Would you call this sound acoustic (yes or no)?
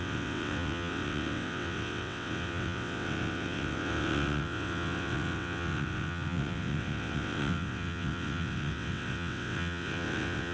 no